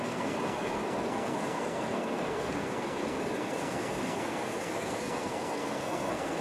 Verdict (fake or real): fake